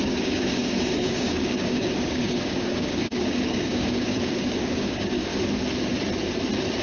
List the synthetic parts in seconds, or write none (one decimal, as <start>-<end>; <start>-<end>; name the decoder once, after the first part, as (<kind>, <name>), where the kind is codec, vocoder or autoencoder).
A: 0.0-5.3 (codec, DAC)